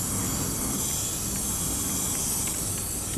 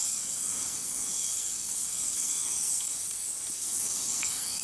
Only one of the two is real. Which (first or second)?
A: first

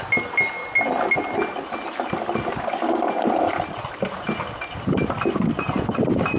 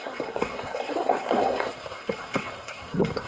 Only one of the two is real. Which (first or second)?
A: first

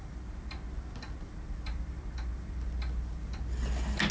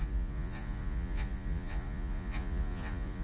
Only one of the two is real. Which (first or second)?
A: first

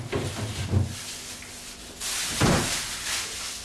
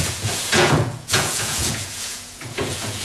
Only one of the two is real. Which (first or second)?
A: first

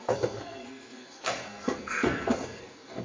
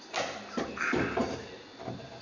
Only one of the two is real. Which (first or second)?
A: second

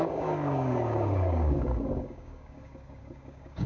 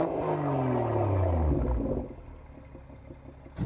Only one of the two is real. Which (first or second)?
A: second